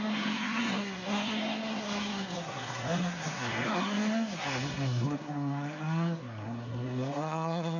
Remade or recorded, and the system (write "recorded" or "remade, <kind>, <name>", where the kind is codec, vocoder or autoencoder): remade, codec, SNAC